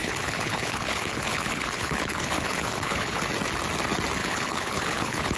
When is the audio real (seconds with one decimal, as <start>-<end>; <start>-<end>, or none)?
3.2-4.2